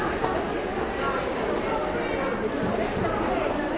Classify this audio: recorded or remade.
recorded